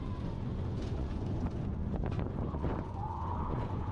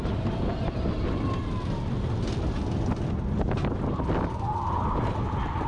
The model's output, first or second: first